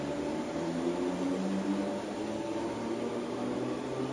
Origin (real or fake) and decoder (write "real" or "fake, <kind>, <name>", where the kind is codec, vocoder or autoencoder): real